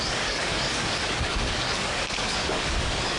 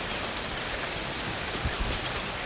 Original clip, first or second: second